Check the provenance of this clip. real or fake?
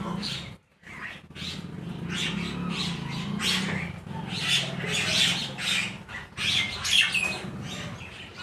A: real